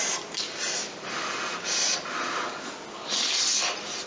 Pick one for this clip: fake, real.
real